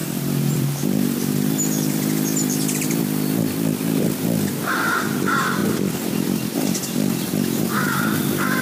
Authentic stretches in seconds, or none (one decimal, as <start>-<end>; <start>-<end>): 4.2-5.6; 8.2-8.6